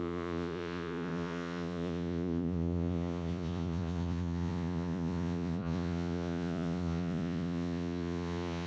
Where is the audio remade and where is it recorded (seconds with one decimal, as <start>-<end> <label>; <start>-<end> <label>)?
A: 0.0-8.7 remade